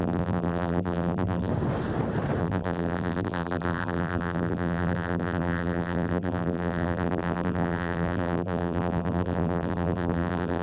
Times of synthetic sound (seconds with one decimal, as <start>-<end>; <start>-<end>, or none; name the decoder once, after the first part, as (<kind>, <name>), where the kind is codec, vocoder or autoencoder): 0.0-1.5 (vocoder, BigVGAN v2); 2.4-10.6